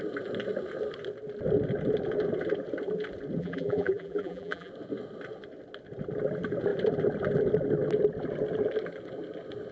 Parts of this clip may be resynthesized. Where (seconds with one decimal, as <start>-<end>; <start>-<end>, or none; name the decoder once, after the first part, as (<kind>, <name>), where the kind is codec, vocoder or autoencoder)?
3.4-4.7 (vocoder, BigVGAN v2)